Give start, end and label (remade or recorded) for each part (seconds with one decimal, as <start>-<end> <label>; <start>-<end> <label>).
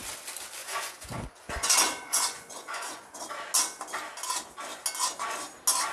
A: 0.0-0.6 recorded; 0.6-3.2 remade; 3.2-5.9 recorded